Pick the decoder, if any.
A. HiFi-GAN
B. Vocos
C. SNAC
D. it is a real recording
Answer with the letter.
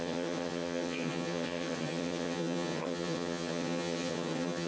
A